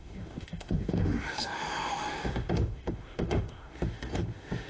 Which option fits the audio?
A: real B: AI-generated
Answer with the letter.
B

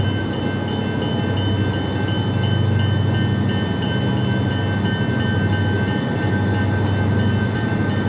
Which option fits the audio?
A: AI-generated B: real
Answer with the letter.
B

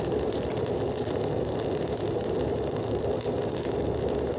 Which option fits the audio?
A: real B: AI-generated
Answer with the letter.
B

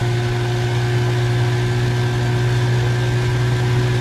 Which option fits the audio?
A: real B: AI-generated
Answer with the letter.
A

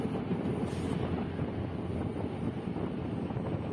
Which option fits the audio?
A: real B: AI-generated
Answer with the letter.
A